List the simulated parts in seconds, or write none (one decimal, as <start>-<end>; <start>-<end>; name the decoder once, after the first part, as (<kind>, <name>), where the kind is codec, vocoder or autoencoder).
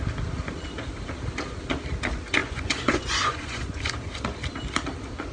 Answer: 2.4-3.8 (vocoder, Vocos)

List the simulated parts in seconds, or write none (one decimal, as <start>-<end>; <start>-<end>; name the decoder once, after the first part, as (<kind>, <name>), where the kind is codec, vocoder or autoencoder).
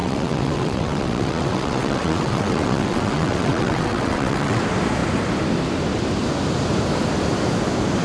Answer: 0.0-4.6 (vocoder, WaveNeXt)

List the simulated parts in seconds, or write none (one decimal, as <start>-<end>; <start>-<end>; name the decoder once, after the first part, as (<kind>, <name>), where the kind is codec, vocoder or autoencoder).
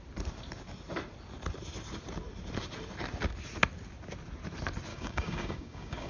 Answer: 4.9-6.1 (codec, DAC)